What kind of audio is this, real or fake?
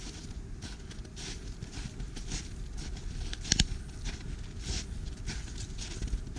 real